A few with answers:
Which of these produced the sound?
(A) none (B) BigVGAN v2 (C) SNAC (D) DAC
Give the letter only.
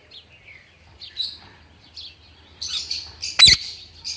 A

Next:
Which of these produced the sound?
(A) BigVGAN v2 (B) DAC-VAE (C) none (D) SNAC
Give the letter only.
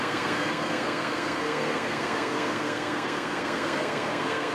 D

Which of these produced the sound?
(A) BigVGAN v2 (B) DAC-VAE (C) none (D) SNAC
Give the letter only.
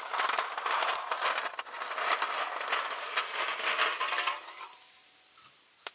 C